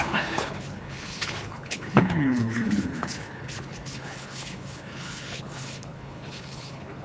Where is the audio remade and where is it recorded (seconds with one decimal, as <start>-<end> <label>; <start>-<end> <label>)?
0.0-7.0 remade

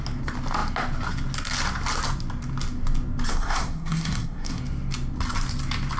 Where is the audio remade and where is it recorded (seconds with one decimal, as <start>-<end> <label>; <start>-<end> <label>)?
0.0-3.3 recorded; 3.3-4.6 remade; 4.6-6.0 recorded

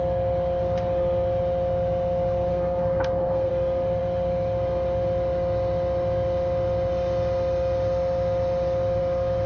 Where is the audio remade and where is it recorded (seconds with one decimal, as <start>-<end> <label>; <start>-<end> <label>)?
0.0-2.5 recorded; 2.5-3.5 remade; 3.5-9.5 recorded

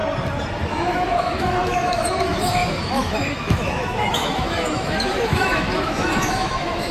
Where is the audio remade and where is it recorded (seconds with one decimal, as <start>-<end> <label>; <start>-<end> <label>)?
0.0-0.7 recorded; 0.7-6.9 remade

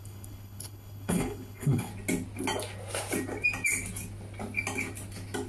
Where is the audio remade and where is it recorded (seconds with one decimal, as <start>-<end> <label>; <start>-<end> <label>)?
0.0-1.9 remade; 1.9-5.5 recorded

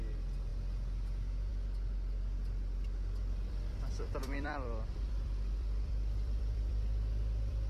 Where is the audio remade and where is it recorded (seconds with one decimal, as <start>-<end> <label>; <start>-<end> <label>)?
0.0-3.2 recorded; 3.2-7.7 remade

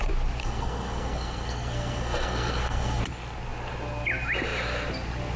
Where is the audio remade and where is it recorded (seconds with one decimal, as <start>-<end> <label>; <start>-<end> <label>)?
0.0-0.4 recorded; 0.4-3.0 remade; 3.0-5.4 recorded